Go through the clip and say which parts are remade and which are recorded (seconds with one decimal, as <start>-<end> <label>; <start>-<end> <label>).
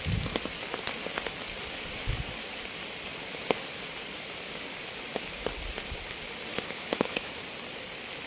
0.0-6.5 recorded; 6.5-7.4 remade; 7.4-8.3 recorded